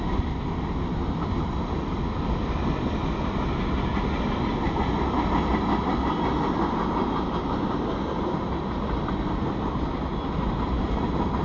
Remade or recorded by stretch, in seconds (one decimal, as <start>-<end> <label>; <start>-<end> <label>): 0.0-11.4 recorded